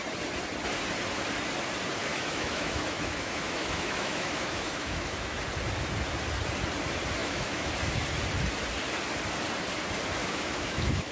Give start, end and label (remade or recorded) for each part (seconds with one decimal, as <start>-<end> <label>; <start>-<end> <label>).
0.0-2.1 recorded; 2.1-5.4 remade; 5.4-7.2 recorded; 7.2-7.7 remade; 7.7-10.2 recorded; 10.2-11.1 remade